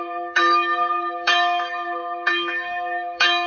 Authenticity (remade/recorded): remade